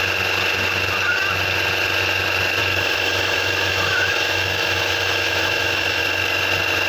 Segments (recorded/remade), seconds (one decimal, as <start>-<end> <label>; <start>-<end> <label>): 0.0-2.6 recorded; 2.6-6.0 remade; 6.0-6.9 recorded